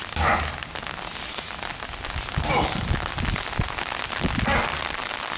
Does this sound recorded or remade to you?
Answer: recorded